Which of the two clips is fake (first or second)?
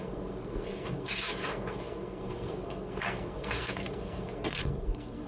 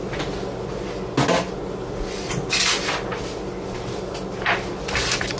first